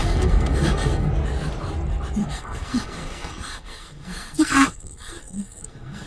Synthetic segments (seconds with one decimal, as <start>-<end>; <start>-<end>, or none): 0.0-1.1; 2.2-6.1